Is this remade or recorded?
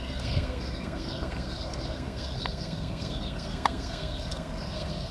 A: remade